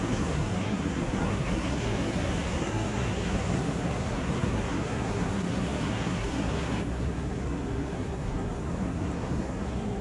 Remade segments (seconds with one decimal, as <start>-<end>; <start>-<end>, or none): 0.0-10.0